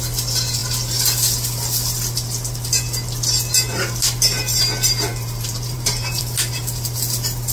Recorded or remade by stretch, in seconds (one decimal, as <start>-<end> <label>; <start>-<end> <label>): 0.0-5.1 recorded; 5.1-6.2 remade; 6.2-7.5 recorded